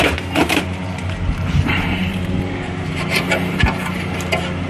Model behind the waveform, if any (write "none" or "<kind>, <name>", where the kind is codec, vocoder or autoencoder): vocoder, BigVGAN v2